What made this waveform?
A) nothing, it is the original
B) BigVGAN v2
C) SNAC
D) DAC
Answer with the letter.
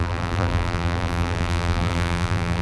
B